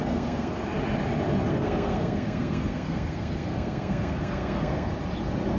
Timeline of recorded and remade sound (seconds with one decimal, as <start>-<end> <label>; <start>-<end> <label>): 0.0-0.6 remade; 0.6-1.5 recorded; 1.5-4.9 remade; 4.9-5.6 recorded